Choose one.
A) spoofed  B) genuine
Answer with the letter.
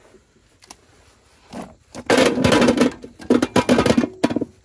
B